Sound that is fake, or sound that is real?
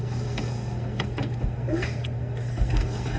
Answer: fake